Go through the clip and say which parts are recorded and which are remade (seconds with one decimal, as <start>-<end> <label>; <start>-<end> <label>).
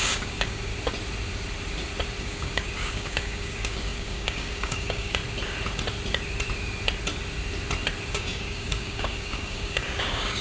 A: 0.0-0.7 remade; 0.7-2.2 recorded; 2.2-5.2 remade; 5.2-8.1 recorded; 8.1-10.4 remade